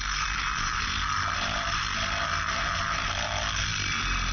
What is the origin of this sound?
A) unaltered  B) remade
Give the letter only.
A